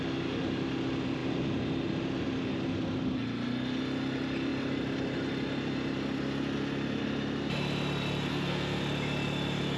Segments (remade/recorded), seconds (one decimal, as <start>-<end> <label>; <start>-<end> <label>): 0.0-8.3 recorded; 8.3-8.8 remade; 8.8-9.8 recorded